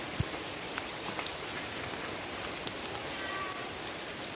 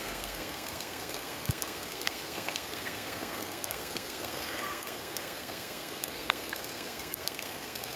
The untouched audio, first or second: first